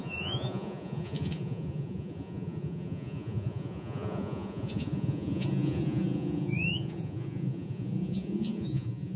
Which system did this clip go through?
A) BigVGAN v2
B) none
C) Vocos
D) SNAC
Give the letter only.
C